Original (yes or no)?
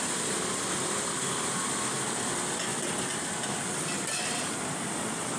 no